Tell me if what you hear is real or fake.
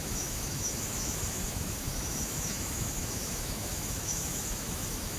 fake